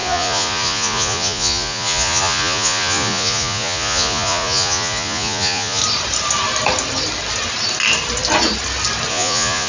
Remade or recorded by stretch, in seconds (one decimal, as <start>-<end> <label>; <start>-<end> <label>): 0.0-5.8 remade; 5.8-9.1 recorded; 9.1-9.7 remade